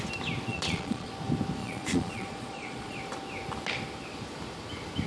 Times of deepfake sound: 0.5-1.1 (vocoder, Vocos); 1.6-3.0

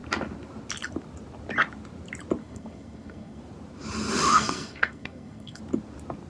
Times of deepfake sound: 2.4-3.4 (codec, SNAC); 4.3-5.6

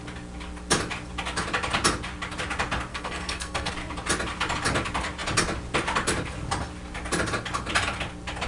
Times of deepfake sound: 2.9-3.7 (codec, SNAC)